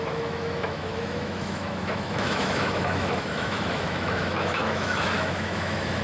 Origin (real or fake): fake